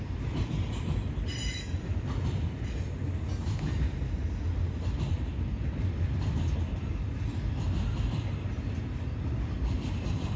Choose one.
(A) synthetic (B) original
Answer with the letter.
B